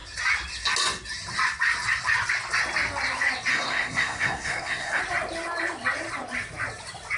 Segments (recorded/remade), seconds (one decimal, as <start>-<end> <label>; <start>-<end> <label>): 0.0-3.5 recorded; 3.5-5.0 remade; 5.0-7.2 recorded